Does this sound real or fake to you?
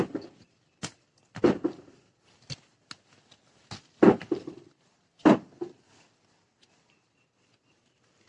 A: real